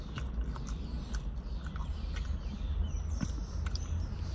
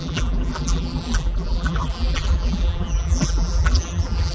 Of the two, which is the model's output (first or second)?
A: second